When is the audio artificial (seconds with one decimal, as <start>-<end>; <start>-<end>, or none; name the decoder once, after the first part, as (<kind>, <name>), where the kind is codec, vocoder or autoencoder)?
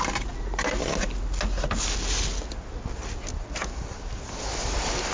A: none